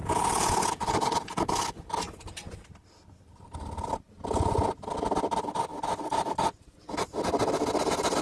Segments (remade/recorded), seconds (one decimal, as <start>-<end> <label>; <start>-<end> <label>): 0.0-1.4 remade; 1.4-8.2 recorded